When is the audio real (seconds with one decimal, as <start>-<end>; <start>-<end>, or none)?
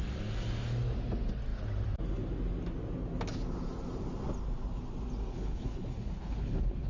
0.0-5.3